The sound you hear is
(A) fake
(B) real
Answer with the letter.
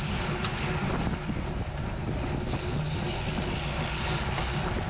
B